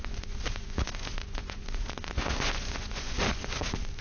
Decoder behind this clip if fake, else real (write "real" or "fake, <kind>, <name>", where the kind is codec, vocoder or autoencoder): fake, vocoder, Vocos